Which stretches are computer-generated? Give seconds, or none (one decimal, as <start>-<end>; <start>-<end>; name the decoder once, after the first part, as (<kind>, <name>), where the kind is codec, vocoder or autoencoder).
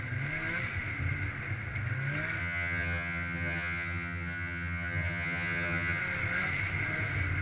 2.4-6.0 (vocoder, HiFi-GAN)